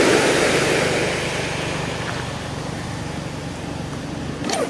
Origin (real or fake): real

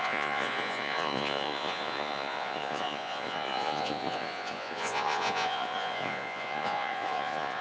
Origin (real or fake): fake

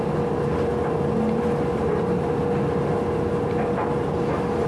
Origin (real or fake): real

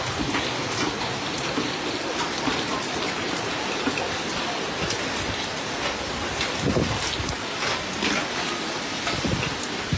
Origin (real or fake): real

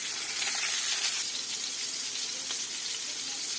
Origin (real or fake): real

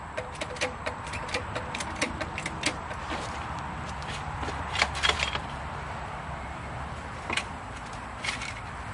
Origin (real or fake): fake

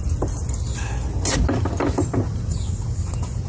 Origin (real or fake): real